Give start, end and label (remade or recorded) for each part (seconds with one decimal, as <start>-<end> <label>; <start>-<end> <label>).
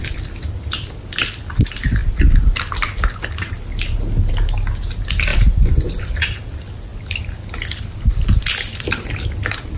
0.0-9.8 recorded